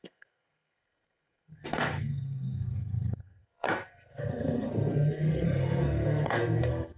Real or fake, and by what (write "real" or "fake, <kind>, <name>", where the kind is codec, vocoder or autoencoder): fake, codec, SNAC